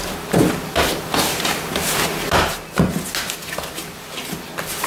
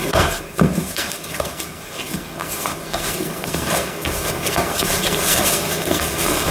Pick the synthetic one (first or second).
second